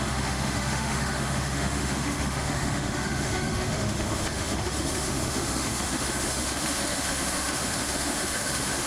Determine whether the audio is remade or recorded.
remade